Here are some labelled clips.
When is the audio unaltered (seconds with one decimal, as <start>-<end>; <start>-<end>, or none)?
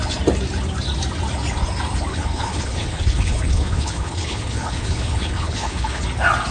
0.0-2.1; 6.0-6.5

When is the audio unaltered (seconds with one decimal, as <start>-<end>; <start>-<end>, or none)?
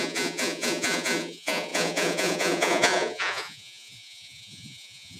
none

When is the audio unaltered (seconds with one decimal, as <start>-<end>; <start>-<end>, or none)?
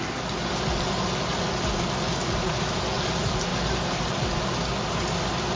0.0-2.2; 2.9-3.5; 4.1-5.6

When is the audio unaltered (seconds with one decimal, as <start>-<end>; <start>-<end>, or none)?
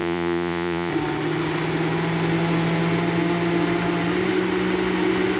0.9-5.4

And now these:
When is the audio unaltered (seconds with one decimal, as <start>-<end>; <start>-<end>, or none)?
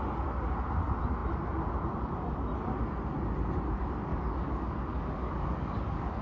0.0-4.1